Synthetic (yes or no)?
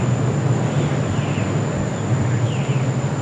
no